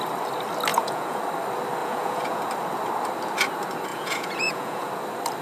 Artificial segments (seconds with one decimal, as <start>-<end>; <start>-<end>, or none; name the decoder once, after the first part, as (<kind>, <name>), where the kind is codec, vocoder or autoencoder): 0.7-1.2 (vocoder, Vocos); 1.8-2.4; 3.9-4.9

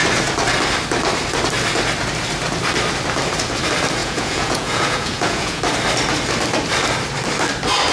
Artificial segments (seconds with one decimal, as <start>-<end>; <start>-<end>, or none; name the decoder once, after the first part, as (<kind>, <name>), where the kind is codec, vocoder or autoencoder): 4.0-5.6 (vocoder, Vocos)